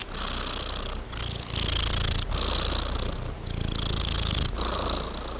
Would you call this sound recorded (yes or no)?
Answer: yes